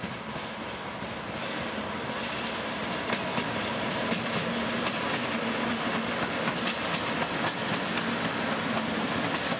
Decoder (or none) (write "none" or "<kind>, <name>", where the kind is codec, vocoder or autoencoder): none